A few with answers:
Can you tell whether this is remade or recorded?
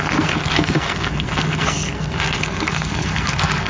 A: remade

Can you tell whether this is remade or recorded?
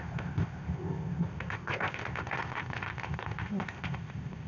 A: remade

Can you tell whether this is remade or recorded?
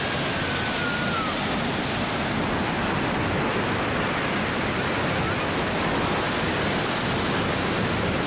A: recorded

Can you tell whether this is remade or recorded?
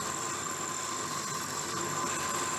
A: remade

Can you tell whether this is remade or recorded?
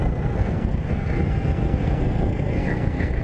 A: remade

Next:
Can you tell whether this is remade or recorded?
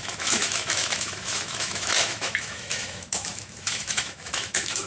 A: remade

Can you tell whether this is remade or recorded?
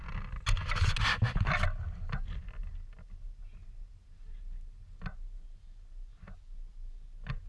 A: recorded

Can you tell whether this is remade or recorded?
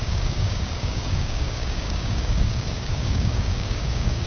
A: remade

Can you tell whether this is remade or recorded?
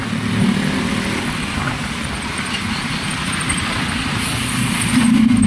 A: recorded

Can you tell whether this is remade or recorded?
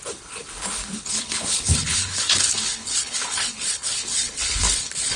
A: remade